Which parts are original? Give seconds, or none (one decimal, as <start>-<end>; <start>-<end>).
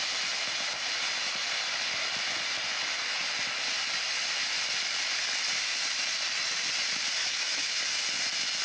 0.0-7.2; 7.8-8.6